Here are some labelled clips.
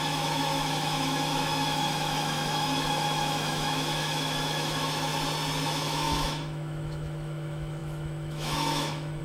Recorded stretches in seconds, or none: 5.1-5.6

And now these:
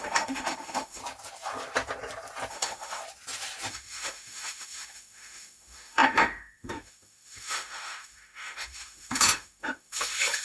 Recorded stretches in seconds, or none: 1.0-2.5; 3.0-3.7

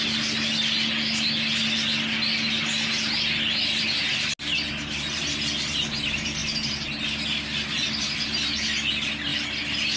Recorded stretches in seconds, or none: 0.0-10.0

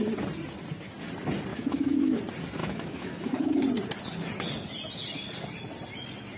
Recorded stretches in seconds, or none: 0.0-1.5; 2.2-2.6; 3.6-6.4

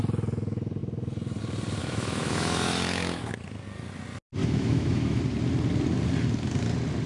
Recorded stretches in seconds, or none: 0.0-1.8; 3.3-4.4; 5.2-7.1